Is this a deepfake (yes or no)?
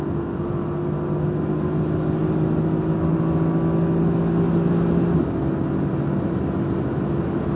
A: no